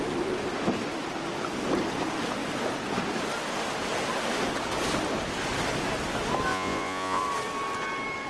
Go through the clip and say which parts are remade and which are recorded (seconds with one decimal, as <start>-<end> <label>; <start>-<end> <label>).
0.0-6.5 recorded; 6.5-7.2 remade; 7.2-8.3 recorded